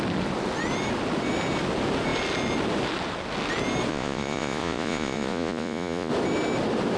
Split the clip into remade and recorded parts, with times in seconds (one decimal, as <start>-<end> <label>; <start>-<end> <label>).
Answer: 0.0-3.9 recorded; 3.9-6.1 remade; 6.1-7.0 recorded